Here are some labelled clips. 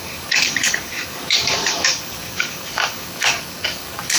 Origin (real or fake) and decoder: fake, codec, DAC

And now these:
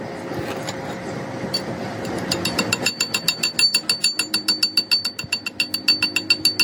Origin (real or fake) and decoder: real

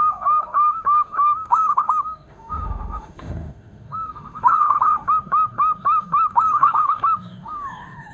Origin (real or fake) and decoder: fake, autoencoder, DAC-VAE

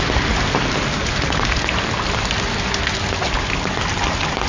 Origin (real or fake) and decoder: real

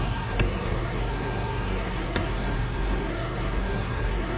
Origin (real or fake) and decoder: fake, codec, SNAC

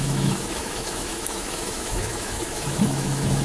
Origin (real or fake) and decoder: fake, autoencoder, DAC-VAE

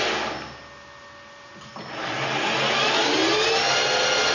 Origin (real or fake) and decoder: real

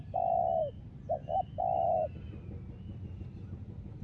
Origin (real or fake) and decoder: real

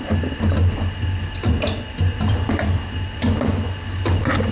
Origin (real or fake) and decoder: real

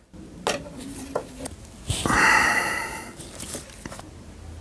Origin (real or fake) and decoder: real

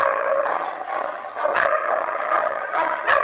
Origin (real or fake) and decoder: fake, vocoder, HiFi-GAN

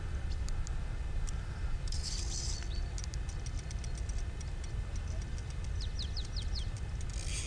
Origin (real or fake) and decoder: real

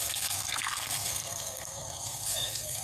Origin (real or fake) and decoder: fake, codec, SNAC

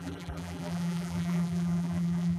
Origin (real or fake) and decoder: fake, vocoder, BigVGAN v2